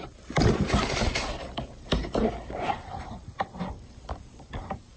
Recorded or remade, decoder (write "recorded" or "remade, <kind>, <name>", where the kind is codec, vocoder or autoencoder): recorded